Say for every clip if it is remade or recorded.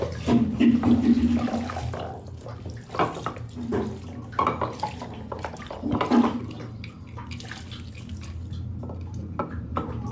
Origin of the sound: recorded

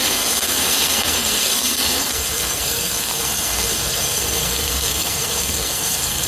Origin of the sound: remade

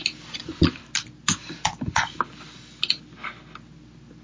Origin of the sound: recorded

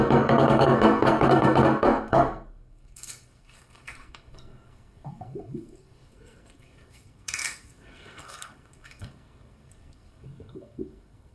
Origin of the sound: remade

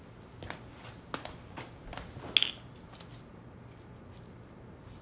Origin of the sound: recorded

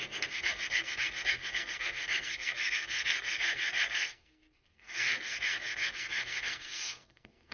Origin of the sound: remade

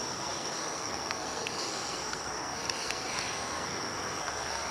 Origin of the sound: remade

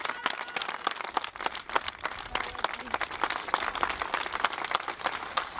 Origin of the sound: recorded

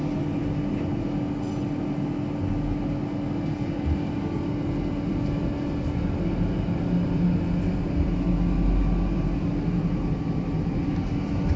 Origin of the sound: recorded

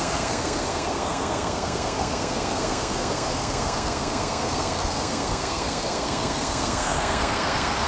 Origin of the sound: remade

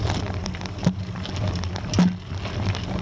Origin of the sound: recorded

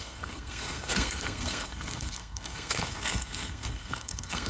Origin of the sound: remade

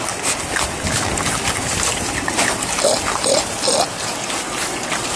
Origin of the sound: recorded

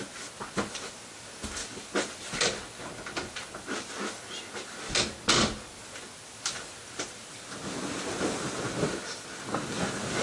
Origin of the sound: recorded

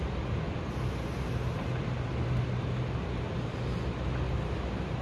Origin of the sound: recorded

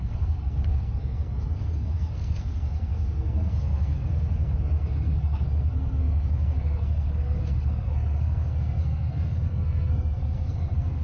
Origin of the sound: remade